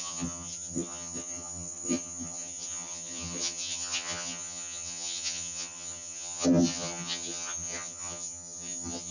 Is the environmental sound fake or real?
fake